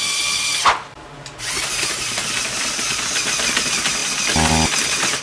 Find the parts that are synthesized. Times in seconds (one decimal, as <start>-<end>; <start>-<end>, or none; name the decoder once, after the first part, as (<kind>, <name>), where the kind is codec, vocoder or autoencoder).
none